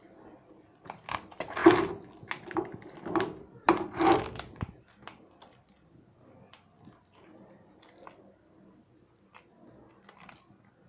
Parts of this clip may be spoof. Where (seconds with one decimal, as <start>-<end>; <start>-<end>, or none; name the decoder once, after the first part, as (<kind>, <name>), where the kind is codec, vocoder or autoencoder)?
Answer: none